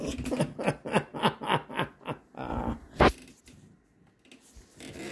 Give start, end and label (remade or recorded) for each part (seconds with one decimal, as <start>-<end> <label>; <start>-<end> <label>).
0.0-5.1 recorded

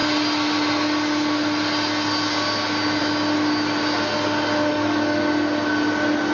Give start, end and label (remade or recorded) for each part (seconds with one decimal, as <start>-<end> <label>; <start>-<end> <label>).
0.0-4.7 recorded; 4.7-5.3 remade; 5.3-6.3 recorded